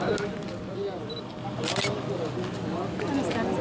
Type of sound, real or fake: real